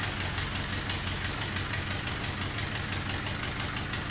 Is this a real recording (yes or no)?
yes